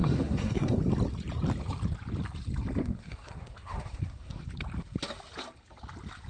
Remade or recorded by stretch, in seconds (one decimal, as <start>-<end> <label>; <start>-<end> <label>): 0.0-0.8 remade; 0.8-2.8 recorded; 2.8-4.4 remade; 4.4-6.3 recorded